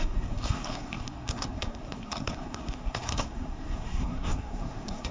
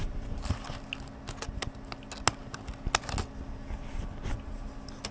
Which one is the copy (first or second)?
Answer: first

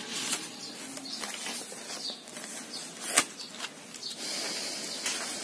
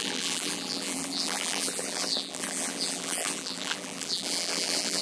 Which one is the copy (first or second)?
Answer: second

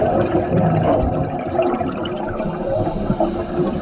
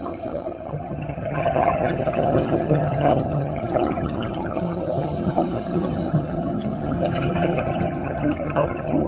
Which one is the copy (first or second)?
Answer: second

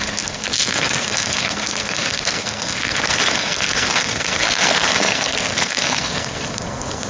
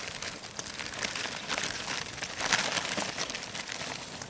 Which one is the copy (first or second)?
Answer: first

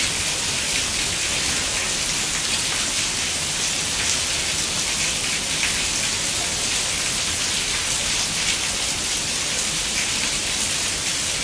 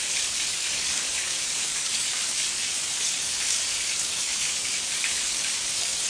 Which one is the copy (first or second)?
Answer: second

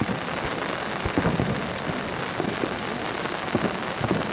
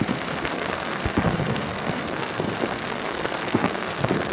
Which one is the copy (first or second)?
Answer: second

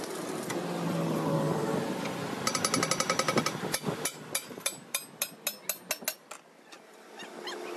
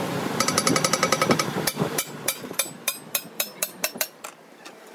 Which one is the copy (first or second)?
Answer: second